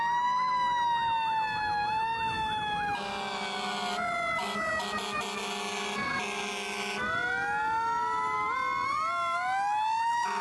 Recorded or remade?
recorded